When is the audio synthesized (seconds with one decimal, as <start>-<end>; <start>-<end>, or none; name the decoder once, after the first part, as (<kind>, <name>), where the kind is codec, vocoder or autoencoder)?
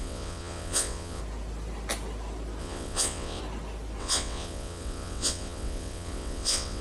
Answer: 0.0-1.2 (vocoder, WaveNeXt); 2.6-3.4; 4.0-6.8